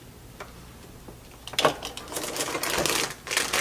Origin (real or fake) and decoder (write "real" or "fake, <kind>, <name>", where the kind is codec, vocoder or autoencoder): real